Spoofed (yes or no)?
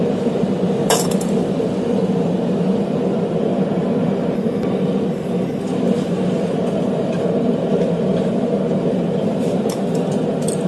yes